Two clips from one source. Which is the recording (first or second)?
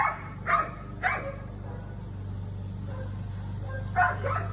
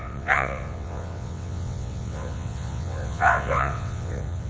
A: first